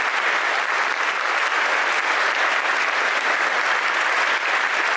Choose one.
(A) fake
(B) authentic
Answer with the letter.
B